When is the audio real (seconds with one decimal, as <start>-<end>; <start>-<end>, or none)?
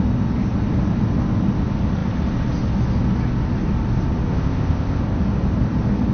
0.0-4.3; 5.0-6.1